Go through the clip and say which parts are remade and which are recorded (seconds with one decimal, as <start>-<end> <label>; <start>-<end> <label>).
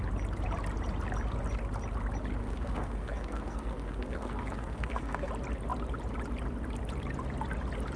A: 0.0-2.4 recorded; 2.4-5.3 remade; 5.3-8.0 recorded